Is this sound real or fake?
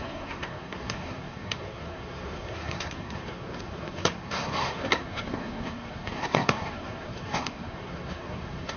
fake